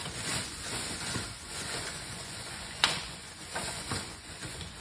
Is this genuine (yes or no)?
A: no